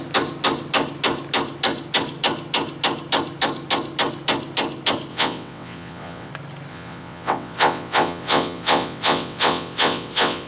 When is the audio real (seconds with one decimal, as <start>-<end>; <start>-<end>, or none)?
0.0-5.1; 6.3-6.7